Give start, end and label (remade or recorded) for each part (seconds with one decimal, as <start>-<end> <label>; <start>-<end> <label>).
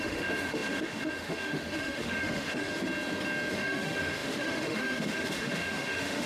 0.0-2.7 remade; 2.7-3.5 recorded; 3.5-6.3 remade